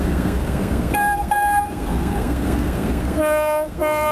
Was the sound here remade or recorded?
remade